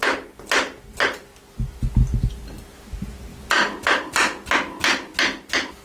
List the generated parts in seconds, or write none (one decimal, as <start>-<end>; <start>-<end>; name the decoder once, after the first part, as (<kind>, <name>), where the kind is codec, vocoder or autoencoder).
none